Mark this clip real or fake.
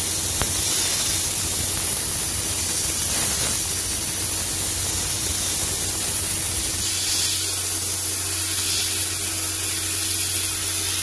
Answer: real